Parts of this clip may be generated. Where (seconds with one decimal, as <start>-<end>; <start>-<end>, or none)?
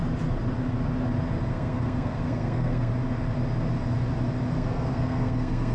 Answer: 1.5-2.9; 4.5-5.7